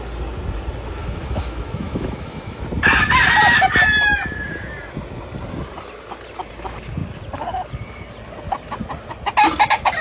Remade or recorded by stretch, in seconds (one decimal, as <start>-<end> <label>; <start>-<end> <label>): 0.0-1.0 recorded; 1.0-2.6 remade; 2.6-10.0 recorded